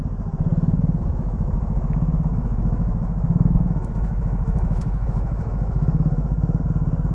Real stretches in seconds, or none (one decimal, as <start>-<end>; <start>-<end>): 0.0-0.5; 1.9-2.3; 6.6-7.1